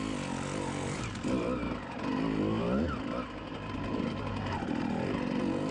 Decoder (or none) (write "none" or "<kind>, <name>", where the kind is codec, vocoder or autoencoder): none